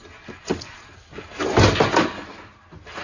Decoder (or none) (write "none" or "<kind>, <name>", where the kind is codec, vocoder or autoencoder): none